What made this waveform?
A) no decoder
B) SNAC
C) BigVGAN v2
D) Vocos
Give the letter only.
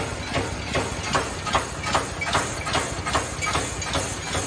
A